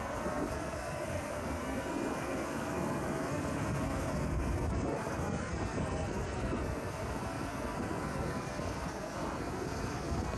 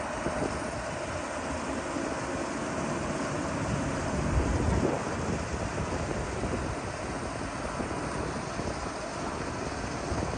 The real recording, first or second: second